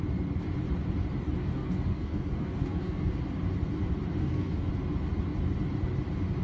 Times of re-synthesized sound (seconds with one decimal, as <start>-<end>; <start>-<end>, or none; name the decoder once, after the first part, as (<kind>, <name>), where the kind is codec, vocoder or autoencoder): 1.4-3.1 (codec, SNAC); 4.2-4.7

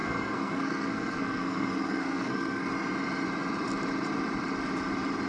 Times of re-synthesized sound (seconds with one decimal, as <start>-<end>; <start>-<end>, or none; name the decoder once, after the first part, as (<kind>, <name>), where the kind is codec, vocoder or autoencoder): 0.0-2.7 (codec, SNAC)

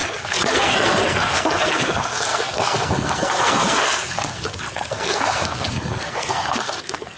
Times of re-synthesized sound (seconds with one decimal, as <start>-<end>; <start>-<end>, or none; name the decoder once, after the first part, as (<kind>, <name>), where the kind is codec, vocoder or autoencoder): 0.0-7.2 (codec, SNAC)

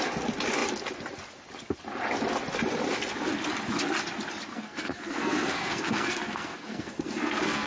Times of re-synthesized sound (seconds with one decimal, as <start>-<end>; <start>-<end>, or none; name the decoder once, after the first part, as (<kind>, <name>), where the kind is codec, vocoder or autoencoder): 4.5-7.7 (codec, SNAC)

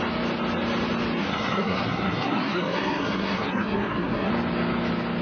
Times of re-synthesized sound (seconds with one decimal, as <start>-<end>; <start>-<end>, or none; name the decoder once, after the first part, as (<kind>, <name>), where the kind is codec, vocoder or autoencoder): 1.2-4.3 (codec, SNAC)

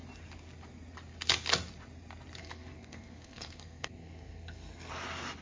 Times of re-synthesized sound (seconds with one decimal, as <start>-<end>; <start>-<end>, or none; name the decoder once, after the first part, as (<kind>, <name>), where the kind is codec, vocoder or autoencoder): 2.4-4.9 (codec, SNAC)

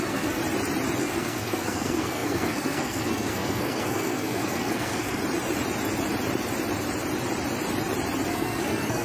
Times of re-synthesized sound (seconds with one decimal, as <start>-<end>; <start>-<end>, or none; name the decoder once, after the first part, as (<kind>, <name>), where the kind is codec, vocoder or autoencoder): 0.0-0.4 (codec, SNAC); 1.0-5.2; 8.3-9.0